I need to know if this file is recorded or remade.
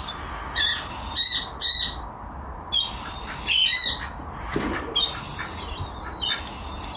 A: recorded